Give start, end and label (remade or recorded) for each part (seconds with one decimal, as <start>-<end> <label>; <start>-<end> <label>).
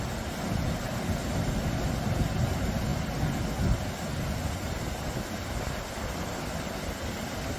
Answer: 0.0-7.6 recorded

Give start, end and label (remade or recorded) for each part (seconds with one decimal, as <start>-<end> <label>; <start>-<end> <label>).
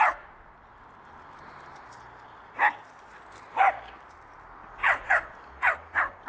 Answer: 0.0-6.3 recorded